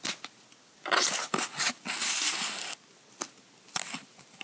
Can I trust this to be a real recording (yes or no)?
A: yes